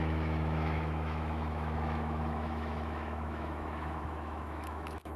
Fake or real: fake